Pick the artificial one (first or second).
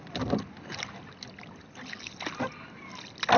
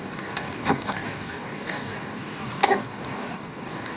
second